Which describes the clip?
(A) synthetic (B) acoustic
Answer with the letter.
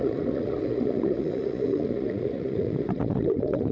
A